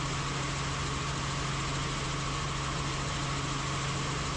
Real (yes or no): yes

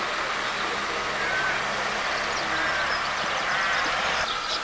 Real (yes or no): yes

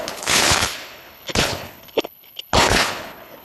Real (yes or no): no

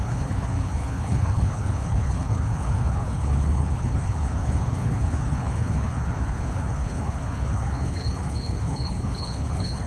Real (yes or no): no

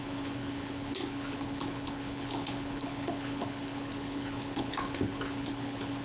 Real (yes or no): no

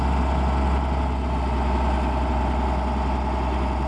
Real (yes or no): yes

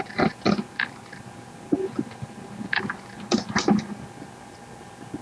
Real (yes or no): yes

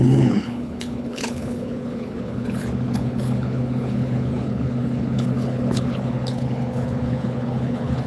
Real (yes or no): no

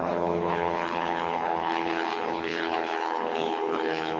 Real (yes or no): no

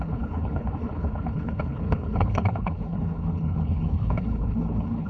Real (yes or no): no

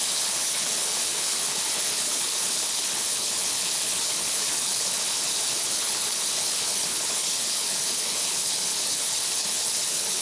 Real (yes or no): no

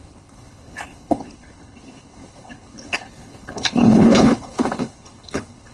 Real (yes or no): no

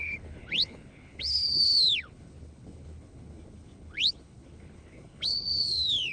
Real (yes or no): no